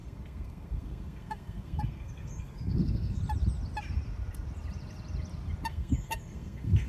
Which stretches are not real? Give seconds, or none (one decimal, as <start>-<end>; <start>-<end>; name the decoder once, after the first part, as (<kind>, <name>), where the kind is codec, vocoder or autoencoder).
0.0-3.2 (codec, SNAC); 5.7-6.9